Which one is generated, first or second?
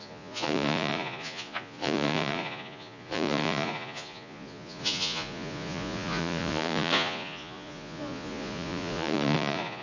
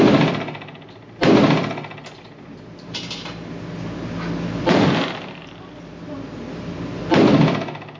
first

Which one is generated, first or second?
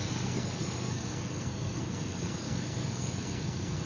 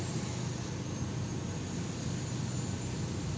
first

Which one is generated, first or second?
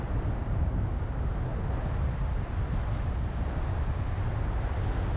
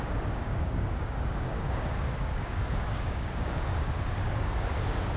second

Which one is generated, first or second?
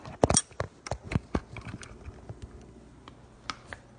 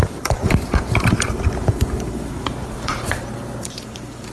second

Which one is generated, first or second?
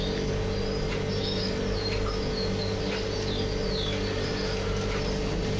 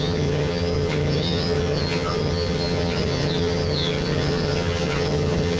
second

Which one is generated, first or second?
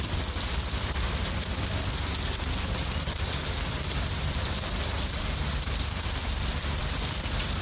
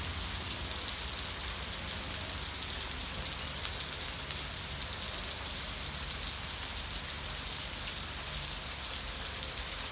first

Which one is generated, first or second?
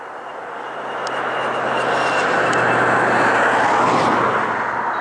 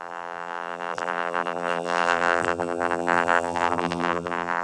second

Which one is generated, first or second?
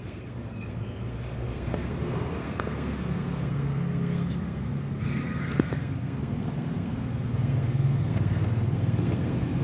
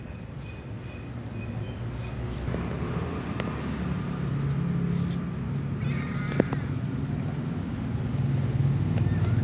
first